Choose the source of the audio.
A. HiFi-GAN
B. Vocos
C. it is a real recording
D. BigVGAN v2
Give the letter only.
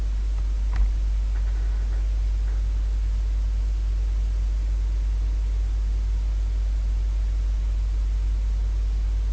C